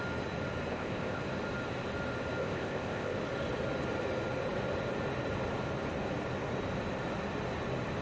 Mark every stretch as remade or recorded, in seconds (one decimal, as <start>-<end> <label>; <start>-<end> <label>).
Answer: 0.0-0.7 recorded; 0.7-1.2 remade; 1.2-2.4 recorded; 2.4-3.2 remade; 3.2-8.0 recorded